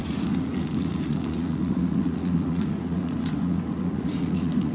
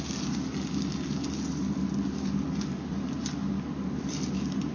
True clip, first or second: second